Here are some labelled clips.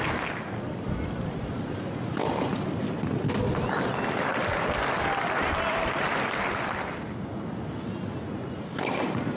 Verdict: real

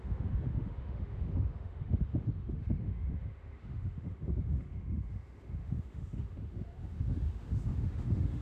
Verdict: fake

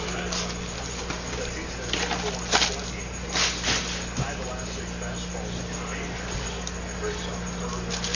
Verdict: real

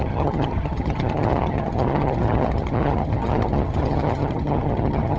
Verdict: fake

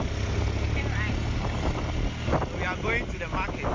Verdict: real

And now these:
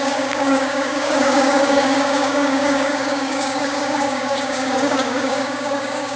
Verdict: fake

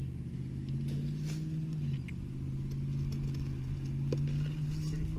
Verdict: real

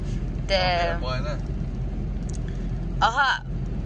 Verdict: real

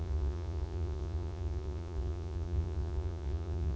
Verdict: fake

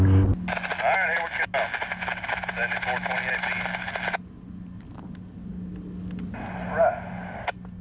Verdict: real